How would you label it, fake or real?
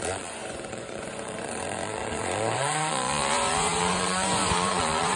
fake